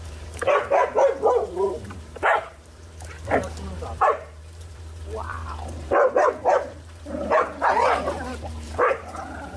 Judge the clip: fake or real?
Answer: fake